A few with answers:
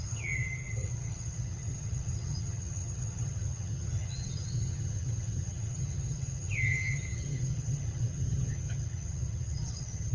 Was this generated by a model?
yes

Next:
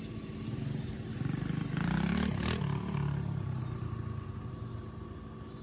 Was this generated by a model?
no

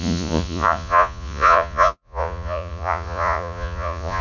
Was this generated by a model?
yes